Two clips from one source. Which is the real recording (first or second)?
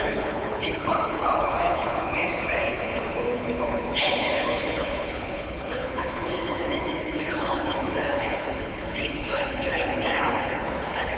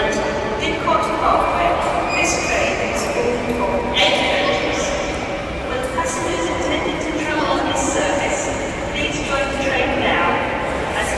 second